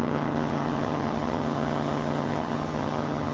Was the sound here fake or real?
fake